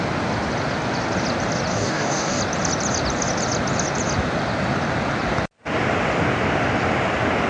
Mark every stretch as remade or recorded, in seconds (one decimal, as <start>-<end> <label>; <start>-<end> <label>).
0.0-1.7 recorded; 1.7-2.4 remade; 2.4-7.5 recorded